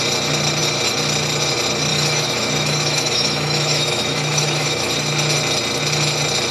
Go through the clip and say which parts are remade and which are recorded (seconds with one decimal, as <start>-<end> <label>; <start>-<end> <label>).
0.0-1.9 recorded; 1.9-4.9 remade; 4.9-6.5 recorded